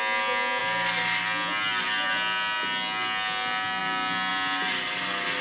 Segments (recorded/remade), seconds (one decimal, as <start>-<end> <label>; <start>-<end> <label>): 0.0-5.4 recorded